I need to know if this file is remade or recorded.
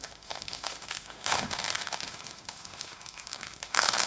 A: remade